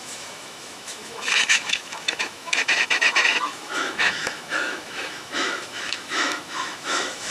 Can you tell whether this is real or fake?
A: fake